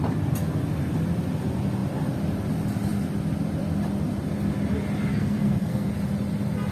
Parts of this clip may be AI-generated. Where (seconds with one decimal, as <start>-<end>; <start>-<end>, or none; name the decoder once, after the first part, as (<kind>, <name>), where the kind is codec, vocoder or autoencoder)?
5.1-5.9 (codec, SNAC)